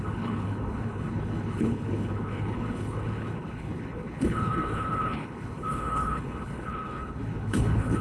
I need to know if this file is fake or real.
fake